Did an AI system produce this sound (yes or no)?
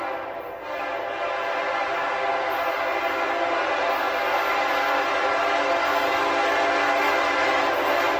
no